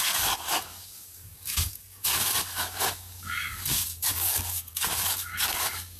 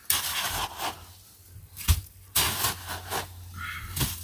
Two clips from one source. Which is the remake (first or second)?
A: first